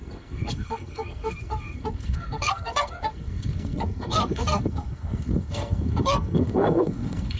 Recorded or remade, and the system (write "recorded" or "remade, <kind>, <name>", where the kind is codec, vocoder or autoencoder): remade, codec, SNAC